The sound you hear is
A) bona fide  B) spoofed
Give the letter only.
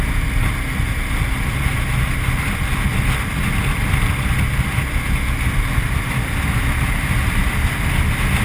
A